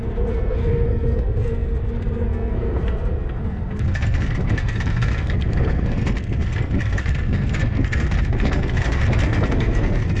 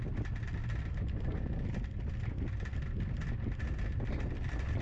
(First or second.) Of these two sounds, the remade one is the first